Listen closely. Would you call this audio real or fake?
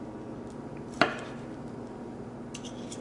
real